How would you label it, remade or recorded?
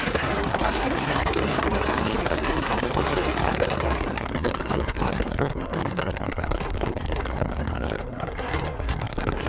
remade